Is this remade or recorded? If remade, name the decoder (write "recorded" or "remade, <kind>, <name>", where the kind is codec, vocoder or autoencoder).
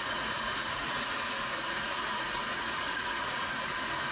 remade, vocoder, Vocos